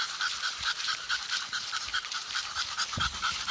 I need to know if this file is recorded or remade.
remade